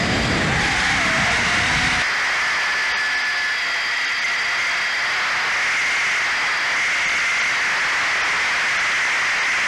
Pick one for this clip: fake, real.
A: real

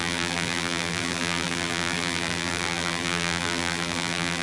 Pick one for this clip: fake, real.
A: fake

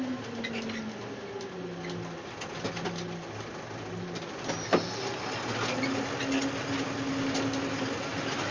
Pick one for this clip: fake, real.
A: real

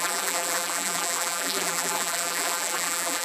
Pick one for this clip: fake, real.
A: fake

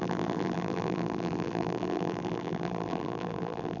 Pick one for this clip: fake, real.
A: fake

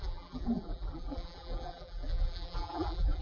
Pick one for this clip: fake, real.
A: fake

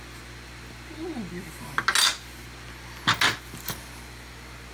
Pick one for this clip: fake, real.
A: real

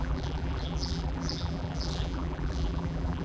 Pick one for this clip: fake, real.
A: fake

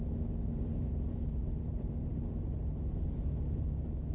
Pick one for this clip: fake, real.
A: fake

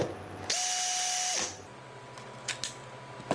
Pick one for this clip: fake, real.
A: real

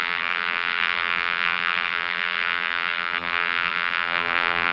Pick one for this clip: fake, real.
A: fake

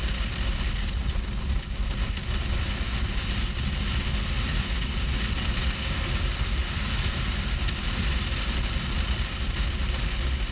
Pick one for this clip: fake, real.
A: real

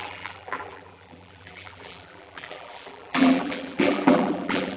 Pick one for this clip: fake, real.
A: fake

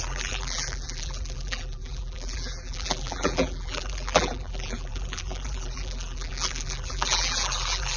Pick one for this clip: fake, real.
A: fake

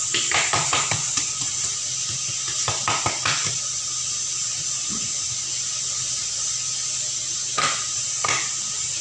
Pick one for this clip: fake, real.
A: real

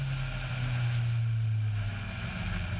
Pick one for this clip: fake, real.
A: real